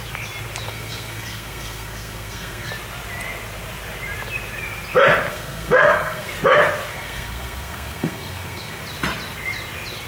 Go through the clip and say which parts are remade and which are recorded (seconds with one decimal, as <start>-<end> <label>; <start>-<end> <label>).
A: 0.0-0.7 recorded; 0.7-2.7 remade; 2.7-5.3 recorded; 5.3-6.3 remade; 6.3-6.9 recorded; 6.9-8.8 remade; 8.8-10.1 recorded